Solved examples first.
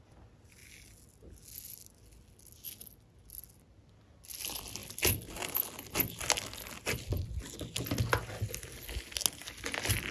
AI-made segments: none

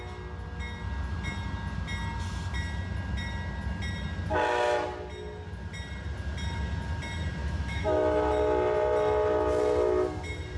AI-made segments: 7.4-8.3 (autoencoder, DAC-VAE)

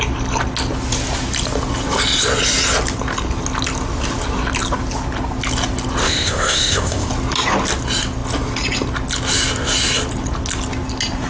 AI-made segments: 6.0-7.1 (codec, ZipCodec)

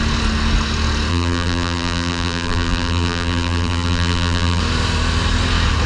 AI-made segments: 1.1-4.6 (vocoder, BigVGAN v2)